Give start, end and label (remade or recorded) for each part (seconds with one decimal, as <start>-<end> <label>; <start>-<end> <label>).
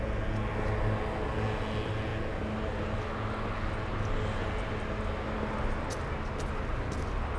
0.0-7.4 recorded